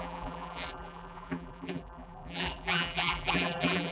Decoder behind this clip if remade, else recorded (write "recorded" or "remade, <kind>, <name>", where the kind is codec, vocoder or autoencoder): remade, vocoder, BigVGAN v2